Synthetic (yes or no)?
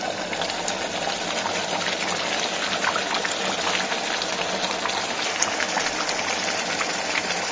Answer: no